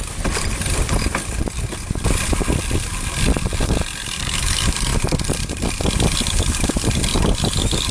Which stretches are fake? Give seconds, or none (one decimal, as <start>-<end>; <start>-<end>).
none